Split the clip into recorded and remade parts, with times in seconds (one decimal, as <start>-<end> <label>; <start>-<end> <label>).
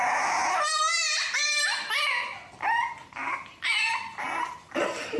0.0-5.2 recorded